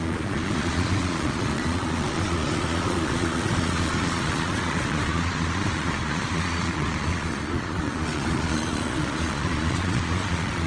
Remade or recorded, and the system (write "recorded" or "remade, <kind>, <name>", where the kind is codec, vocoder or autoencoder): remade, vocoder, Vocos